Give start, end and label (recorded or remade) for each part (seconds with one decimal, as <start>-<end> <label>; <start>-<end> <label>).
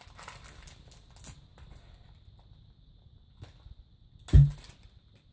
0.0-5.3 recorded